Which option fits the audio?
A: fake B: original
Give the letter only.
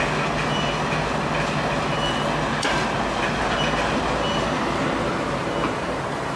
B